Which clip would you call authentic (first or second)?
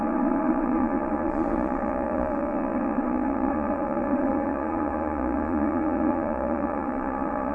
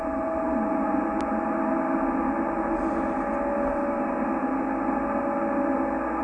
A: second